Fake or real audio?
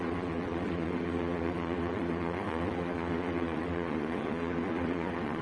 fake